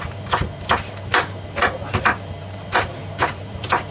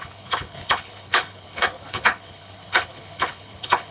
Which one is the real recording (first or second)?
first